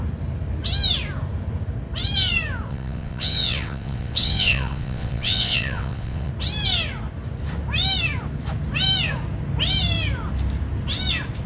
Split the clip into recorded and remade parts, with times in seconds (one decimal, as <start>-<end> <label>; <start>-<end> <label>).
0.0-2.7 recorded; 2.7-6.3 remade; 6.3-11.5 recorded